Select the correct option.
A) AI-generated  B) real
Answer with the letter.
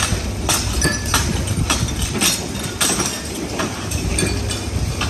B